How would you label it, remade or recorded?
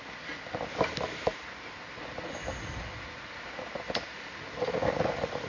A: recorded